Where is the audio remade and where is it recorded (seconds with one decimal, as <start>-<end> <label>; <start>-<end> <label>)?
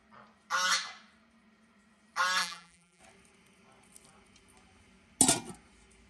0.0-2.4 recorded; 2.4-3.0 remade; 3.0-6.1 recorded